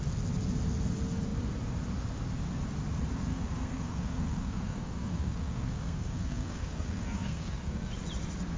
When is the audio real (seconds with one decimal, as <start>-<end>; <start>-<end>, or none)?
0.0-3.3; 7.9-8.6